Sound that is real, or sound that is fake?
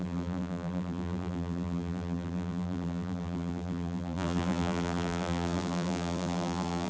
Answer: fake